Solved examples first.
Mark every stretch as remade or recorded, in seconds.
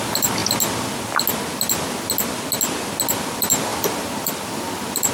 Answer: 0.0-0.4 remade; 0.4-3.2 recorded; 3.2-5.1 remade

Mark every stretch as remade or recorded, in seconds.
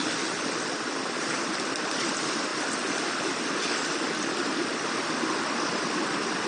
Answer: 0.0-2.5 recorded; 2.5-3.6 remade; 3.6-6.5 recorded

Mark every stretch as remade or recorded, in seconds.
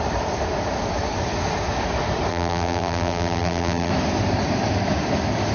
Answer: 0.0-2.3 recorded; 2.3-3.9 remade; 3.9-5.5 recorded